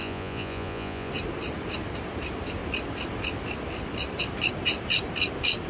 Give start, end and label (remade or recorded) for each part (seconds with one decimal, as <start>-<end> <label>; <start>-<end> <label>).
0.0-1.1 remade; 1.1-5.7 recorded